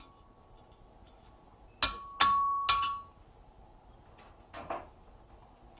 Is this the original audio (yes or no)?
yes